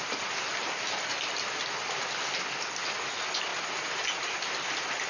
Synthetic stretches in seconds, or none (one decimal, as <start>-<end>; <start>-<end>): none